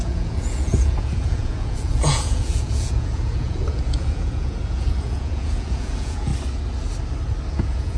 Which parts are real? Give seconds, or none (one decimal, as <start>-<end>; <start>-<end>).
6.3-7.5

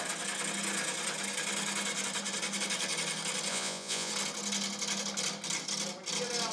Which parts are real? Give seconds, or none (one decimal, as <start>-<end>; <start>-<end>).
0.0-3.5; 4.1-6.5

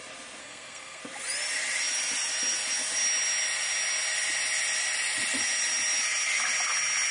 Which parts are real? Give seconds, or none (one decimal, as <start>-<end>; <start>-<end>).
0.0-0.4; 1.0-7.1

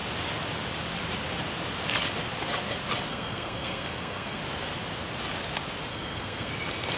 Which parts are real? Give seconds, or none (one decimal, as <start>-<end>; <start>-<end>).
0.0-3.1; 4.4-5.9; 6.5-7.0